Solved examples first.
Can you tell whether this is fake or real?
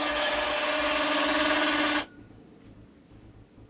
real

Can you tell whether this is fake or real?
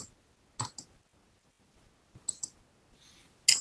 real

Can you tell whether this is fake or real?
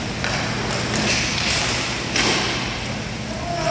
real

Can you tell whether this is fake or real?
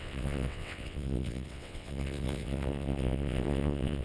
fake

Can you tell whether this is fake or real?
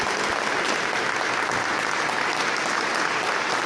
real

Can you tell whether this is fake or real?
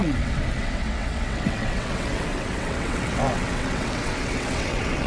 fake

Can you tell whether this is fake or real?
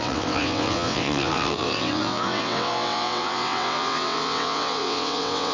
fake